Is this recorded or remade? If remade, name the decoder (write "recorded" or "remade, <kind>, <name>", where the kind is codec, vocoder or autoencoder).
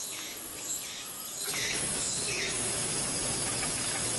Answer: remade, autoencoder, DAC-VAE